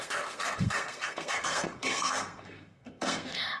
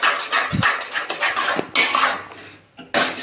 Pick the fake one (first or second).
first